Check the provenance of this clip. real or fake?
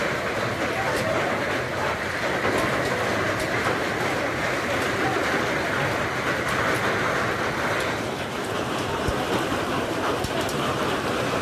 real